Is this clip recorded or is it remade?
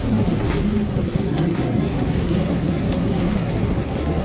remade